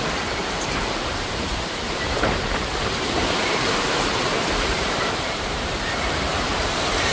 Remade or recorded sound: remade